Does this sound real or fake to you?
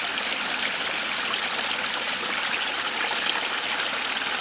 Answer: real